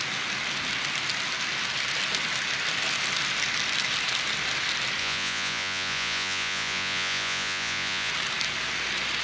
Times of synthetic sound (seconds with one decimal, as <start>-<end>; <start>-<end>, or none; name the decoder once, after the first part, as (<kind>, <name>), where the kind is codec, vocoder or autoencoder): 5.0-8.1 (vocoder, Vocos)